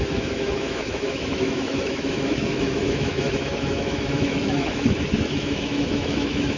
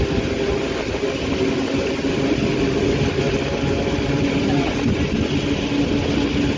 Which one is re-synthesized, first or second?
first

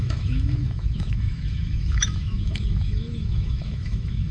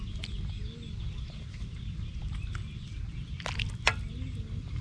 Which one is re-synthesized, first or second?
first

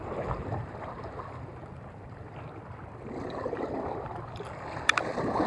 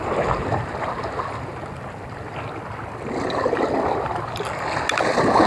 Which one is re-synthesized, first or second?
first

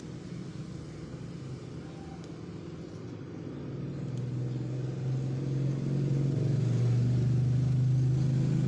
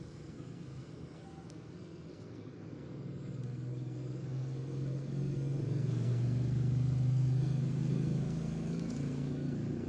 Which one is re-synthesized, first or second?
second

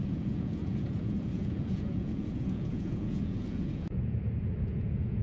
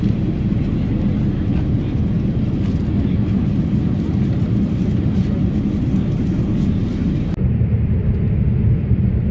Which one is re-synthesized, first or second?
first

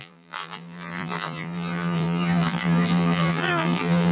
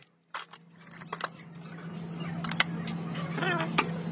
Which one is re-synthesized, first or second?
first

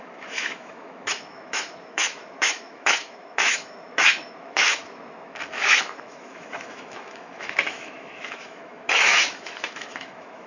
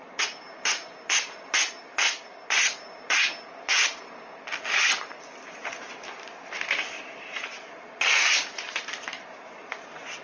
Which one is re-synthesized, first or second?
first